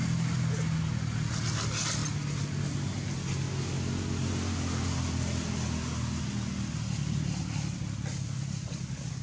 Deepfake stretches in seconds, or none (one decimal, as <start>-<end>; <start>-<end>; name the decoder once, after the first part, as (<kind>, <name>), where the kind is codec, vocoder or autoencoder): none